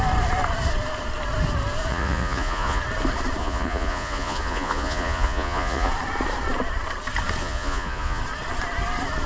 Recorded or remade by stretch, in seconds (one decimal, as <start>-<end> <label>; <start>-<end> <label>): 0.0-1.9 recorded; 1.9-2.8 remade; 2.8-3.4 recorded; 3.4-5.9 remade; 5.9-7.4 recorded; 7.4-8.2 remade; 8.2-9.3 recorded